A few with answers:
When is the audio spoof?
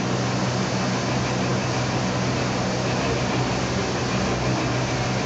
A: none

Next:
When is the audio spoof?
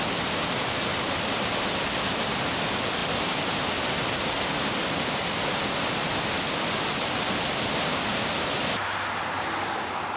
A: none